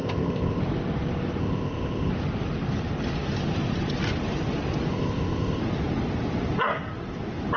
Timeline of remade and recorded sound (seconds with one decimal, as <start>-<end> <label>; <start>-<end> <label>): 0.0-0.6 remade; 0.6-1.4 recorded; 1.4-2.1 remade; 2.1-4.9 recorded; 4.9-5.6 remade; 5.6-7.6 recorded